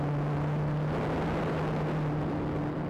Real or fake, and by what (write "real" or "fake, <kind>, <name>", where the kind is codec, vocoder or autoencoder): real